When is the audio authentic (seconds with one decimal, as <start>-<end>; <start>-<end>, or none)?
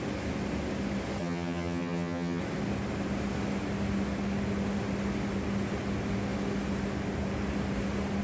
0.0-1.2; 2.4-8.2